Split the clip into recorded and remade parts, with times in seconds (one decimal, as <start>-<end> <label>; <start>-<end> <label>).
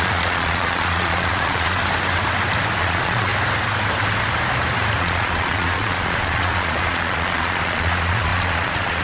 0.0-1.8 remade; 1.8-2.8 recorded; 2.8-3.3 remade; 3.3-5.0 recorded; 5.0-9.0 remade